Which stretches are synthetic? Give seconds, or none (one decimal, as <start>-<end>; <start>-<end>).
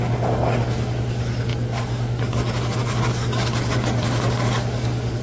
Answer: 0.0-5.2